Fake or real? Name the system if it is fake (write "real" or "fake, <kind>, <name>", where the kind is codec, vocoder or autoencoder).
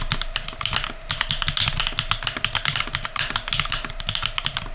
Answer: real